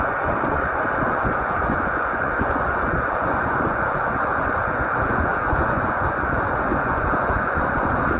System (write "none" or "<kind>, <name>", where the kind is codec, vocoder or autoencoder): vocoder, Vocos